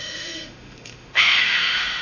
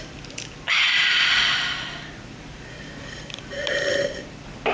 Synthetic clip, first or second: first